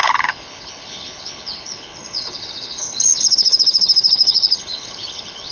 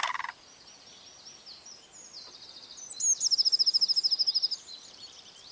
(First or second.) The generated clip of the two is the first